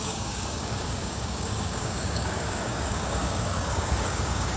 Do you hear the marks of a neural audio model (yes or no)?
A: yes